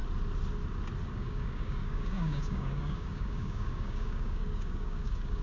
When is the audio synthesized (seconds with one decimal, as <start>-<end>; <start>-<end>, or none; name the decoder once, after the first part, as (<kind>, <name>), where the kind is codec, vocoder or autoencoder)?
1.1-5.4 (codec, DAC)

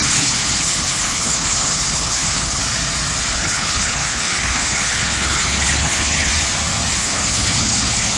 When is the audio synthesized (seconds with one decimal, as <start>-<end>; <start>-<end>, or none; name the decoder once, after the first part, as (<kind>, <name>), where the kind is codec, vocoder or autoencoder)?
0.0-2.6 (codec, HILCodec); 3.3-6.3; 7.0-8.2